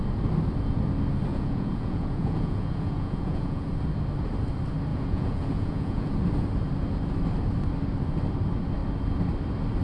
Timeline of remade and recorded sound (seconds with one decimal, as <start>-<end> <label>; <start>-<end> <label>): 0.0-1.3 recorded; 1.3-3.7 remade; 3.7-4.9 recorded; 4.9-6.1 remade; 6.1-9.8 recorded